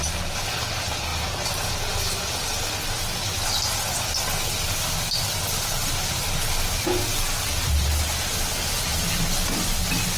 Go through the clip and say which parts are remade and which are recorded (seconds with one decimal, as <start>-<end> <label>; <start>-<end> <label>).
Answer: 0.0-10.2 recorded

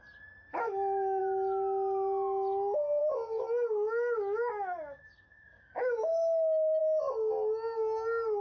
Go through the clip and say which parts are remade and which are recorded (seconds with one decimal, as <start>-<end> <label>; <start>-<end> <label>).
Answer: 0.0-0.5 recorded; 0.5-1.2 remade; 1.2-3.0 recorded; 3.0-6.8 remade; 6.8-8.4 recorded

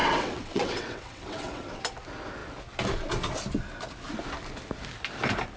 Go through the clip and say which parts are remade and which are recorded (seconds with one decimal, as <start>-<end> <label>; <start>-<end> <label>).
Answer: 0.0-1.8 remade; 1.8-5.6 recorded

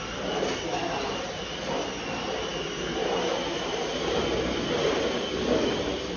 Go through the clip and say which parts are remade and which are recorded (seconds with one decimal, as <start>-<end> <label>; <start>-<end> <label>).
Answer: 0.0-6.2 recorded

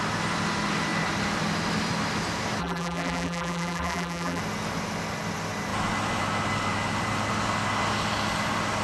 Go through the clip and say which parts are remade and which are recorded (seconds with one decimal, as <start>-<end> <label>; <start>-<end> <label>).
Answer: 0.0-2.6 recorded; 2.6-4.4 remade; 4.4-8.8 recorded